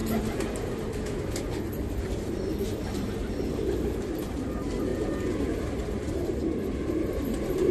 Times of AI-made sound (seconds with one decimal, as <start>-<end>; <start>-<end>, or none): 1.7-4.9; 6.9-7.7